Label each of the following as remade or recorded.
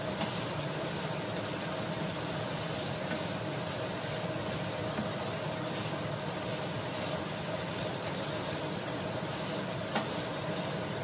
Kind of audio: recorded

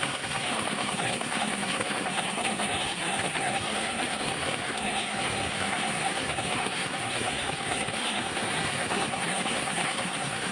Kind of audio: remade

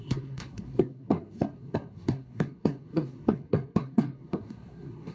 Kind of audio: remade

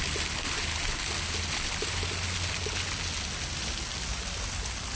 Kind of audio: recorded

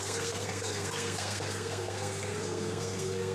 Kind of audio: remade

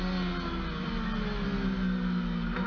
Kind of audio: recorded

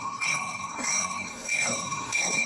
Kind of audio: remade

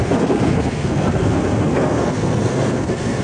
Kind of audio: remade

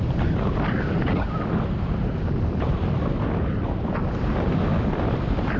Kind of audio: recorded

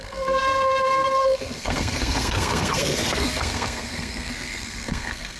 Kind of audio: remade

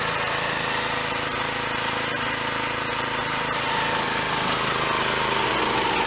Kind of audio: recorded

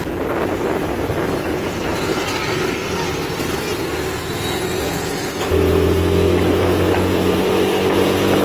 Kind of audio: recorded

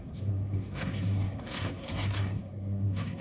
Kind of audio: remade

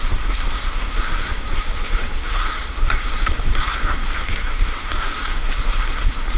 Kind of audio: remade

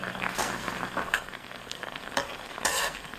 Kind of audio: remade